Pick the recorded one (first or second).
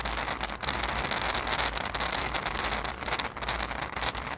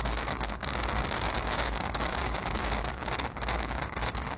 first